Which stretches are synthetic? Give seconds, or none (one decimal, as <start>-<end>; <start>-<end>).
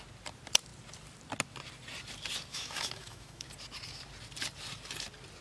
2.5-3.5